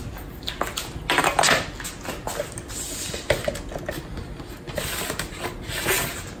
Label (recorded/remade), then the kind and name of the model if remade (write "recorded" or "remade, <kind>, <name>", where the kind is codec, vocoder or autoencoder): recorded